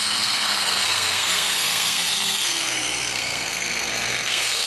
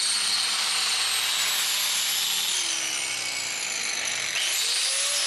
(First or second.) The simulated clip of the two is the first